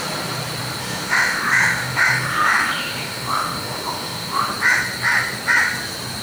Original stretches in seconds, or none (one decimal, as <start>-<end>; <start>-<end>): 0.0-0.8; 4.5-6.2